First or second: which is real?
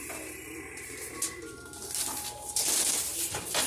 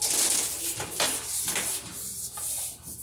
second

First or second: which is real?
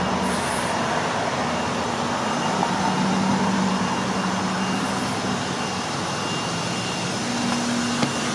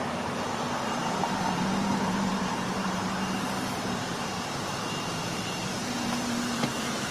first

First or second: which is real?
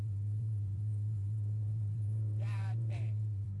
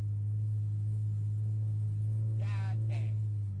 second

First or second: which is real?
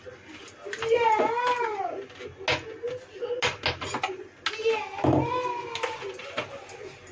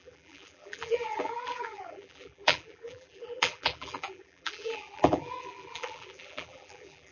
first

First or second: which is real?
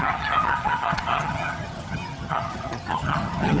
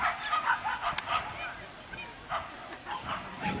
second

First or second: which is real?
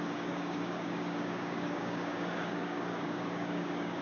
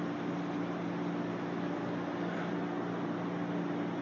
second